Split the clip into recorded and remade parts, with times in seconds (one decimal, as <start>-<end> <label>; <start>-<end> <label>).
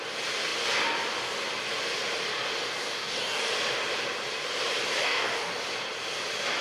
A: 0.0-2.8 recorded; 2.8-3.5 remade; 3.5-5.0 recorded; 5.0-5.5 remade; 5.5-6.6 recorded